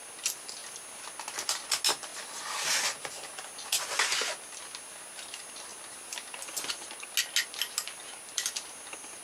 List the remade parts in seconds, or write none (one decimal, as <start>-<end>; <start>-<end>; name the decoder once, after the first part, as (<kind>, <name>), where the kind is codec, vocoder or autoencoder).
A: none